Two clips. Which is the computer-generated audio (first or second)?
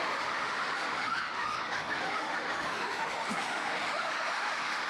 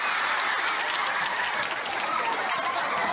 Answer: first